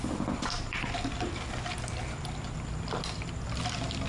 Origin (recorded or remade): recorded